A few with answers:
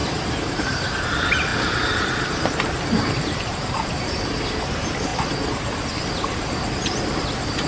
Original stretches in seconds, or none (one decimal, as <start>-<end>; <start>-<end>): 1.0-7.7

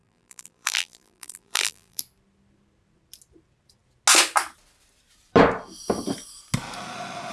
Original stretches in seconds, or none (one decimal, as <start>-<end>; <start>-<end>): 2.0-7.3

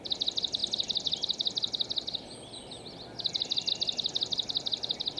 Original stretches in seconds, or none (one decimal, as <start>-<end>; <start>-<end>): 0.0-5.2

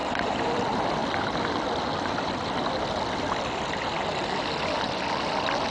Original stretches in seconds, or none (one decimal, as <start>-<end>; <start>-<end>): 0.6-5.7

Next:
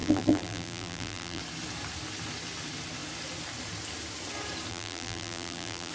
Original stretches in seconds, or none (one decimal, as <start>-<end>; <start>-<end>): 1.4-4.7

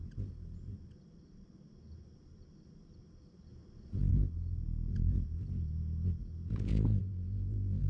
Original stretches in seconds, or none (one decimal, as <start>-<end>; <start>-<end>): 0.0-7.0